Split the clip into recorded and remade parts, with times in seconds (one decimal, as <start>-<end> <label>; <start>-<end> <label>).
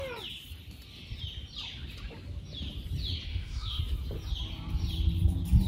0.0-3.3 recorded; 3.3-3.8 remade; 3.8-5.7 recorded